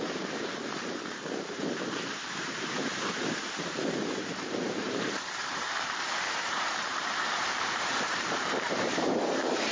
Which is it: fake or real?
fake